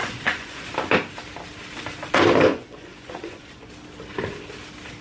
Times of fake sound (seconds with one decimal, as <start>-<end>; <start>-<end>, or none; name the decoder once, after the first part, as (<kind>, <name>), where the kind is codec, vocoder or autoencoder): 0.0-0.7 (vocoder, Vocos); 2.5-3.7